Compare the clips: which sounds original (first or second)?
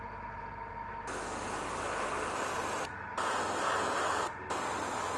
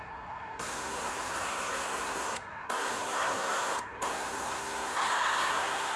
first